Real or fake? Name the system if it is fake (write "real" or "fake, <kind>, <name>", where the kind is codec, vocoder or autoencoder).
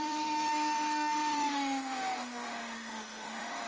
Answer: fake, autoencoder, DAC-VAE